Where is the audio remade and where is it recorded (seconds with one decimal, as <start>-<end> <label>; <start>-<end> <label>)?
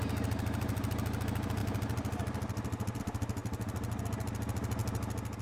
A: 0.0-5.4 recorded